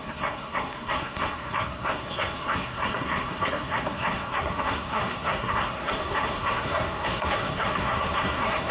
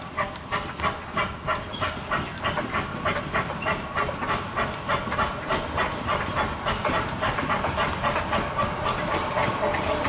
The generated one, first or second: first